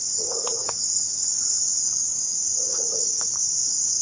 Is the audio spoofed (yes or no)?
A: yes